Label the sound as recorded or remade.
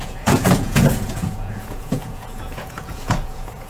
remade